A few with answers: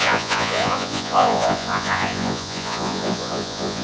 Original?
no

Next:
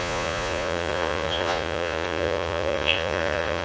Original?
no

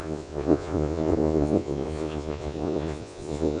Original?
no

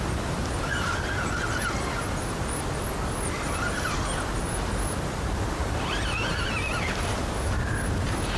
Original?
yes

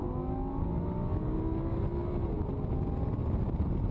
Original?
yes